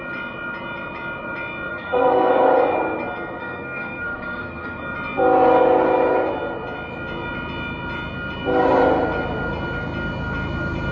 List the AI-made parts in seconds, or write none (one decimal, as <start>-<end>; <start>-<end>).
1.7-2.3; 3.4-4.8